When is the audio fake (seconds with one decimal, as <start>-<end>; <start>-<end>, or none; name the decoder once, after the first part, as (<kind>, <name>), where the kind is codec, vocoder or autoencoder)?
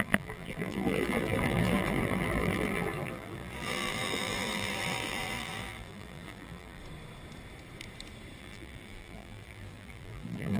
0.0-6.8 (vocoder, BigVGAN v2); 8.4-10.6